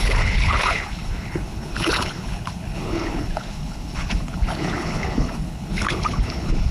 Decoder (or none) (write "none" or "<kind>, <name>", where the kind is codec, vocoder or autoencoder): codec, HILCodec